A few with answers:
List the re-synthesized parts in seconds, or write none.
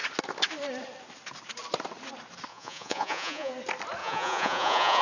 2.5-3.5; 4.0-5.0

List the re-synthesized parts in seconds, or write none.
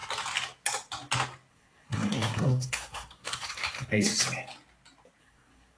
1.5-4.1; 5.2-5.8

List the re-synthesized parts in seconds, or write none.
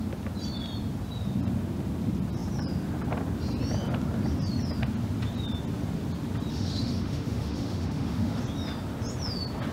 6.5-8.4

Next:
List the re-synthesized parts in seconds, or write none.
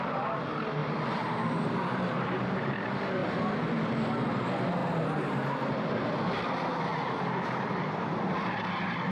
0.8-2.5; 4.8-6.2; 6.9-7.9